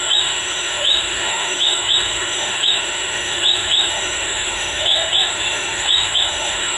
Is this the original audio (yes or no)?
no